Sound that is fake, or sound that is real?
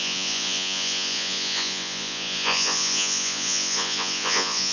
fake